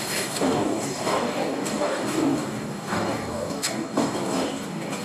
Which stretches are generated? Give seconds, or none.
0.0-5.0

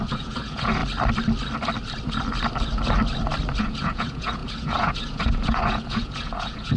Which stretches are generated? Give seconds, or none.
0.0-0.8; 3.6-6.8

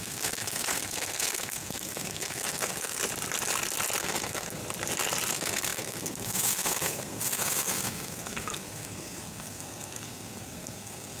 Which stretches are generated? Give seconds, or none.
0.0-3.0; 4.0-4.6; 5.3-11.2

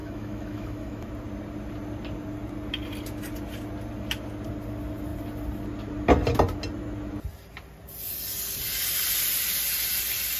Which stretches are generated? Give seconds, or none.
0.0-1.1

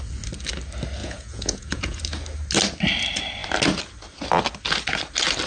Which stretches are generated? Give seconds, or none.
1.0-2.0

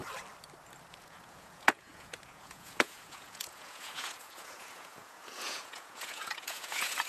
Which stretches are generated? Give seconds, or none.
0.9-7.1

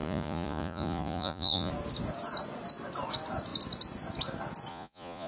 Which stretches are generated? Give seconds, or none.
0.0-1.7; 4.7-5.3